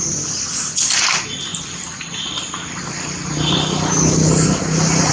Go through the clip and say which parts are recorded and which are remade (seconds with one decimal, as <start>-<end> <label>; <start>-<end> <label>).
0.0-5.1 recorded

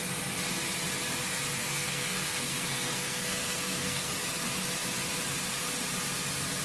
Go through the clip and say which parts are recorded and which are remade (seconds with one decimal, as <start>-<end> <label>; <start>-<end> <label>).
0.0-1.6 recorded; 1.6-4.1 remade; 4.1-6.6 recorded

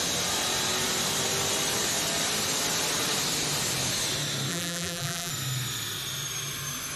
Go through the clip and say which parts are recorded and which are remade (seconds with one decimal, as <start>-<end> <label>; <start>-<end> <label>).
0.0-4.5 recorded; 4.5-5.3 remade; 5.3-7.0 recorded